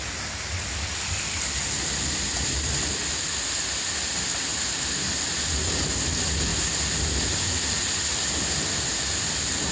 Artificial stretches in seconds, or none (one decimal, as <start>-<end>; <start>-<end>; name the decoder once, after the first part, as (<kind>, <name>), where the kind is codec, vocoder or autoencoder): 4.5-5.6 (vocoder, BigVGAN v2)